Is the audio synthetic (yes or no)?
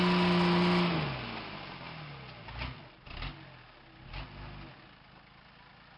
no